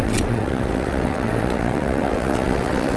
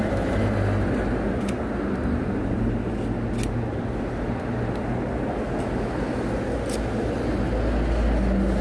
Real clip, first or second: second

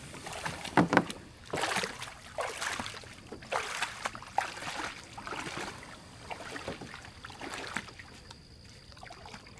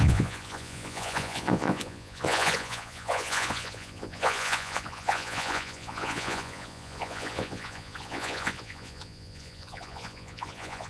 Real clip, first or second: first